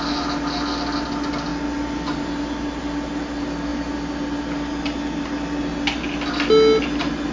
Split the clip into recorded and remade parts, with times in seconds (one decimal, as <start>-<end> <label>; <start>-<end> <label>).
0.0-7.3 recorded